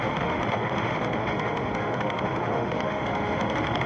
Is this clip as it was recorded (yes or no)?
no